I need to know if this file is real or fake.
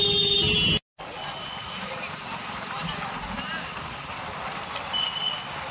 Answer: real